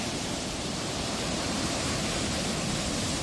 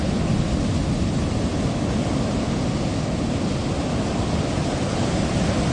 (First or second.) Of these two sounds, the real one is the second